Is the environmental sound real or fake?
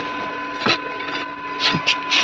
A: real